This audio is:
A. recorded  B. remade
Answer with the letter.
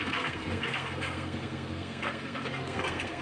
B